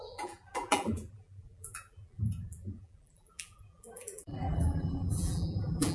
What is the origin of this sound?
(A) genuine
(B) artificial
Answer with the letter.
B